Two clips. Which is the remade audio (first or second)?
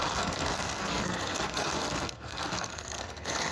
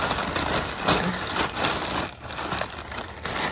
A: first